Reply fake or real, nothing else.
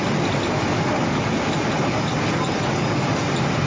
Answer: real